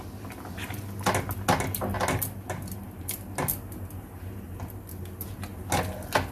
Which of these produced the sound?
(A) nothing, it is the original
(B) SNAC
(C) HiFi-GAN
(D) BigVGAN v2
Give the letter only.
A